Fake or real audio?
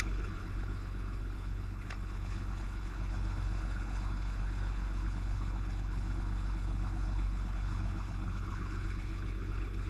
fake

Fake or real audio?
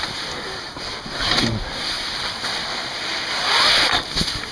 real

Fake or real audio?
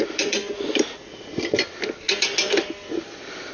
real